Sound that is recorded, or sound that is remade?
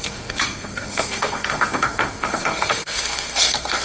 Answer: remade